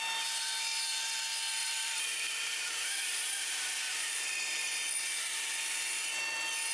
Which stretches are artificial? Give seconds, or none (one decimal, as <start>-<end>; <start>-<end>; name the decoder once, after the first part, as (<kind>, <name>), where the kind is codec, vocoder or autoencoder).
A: 1.6-5.0 (vocoder, BigVGAN v2)